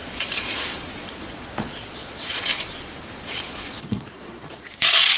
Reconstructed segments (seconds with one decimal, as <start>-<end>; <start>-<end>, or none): 0.0-2.5; 3.2-5.2